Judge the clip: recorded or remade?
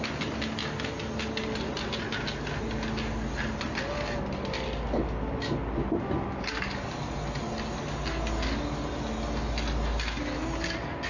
recorded